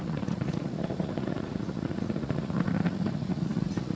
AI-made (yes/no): yes